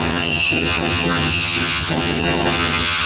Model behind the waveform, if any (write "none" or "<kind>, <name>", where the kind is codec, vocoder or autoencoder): vocoder, HiFi-GAN